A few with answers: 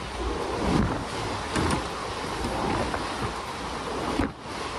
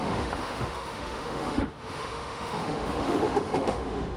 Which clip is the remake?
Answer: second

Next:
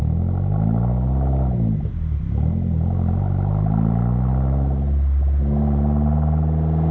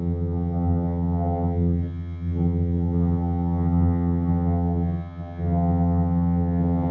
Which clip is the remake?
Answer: second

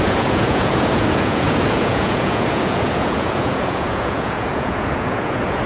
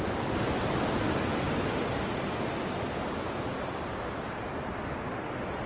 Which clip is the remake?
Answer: first